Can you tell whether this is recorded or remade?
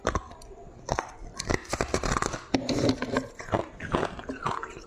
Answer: recorded